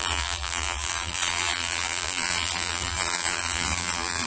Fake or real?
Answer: fake